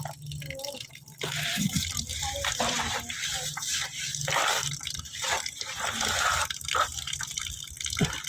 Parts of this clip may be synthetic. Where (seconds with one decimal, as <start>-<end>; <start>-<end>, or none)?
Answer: none